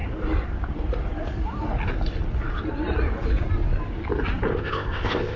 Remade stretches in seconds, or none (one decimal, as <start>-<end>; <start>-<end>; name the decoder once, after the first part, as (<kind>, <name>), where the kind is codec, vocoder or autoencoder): 4.5-5.4 (codec, ZipCodec)